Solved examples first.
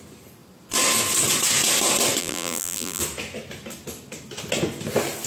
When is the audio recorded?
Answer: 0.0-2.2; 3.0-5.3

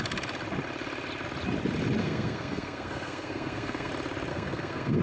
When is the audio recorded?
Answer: 0.0-2.0; 3.9-4.3

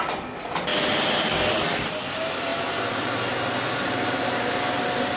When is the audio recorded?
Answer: 2.5-4.4

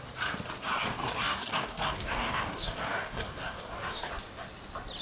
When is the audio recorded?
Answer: 0.0-1.2; 4.1-5.0